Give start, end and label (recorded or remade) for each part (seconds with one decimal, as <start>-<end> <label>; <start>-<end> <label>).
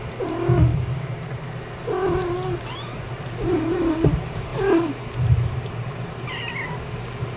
0.0-7.4 recorded